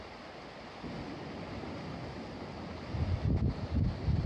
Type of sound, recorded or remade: recorded